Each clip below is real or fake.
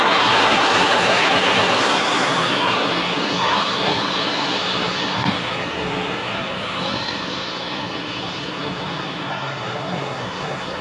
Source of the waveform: fake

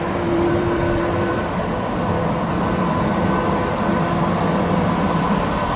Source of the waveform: fake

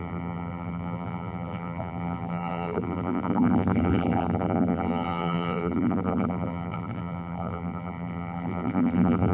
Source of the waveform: fake